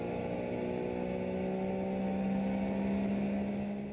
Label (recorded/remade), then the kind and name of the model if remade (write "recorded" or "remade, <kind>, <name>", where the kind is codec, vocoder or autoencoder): recorded